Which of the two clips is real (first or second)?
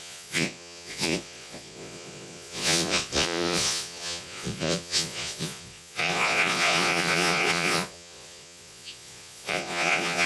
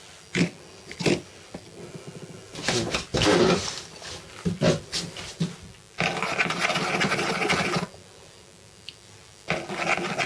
second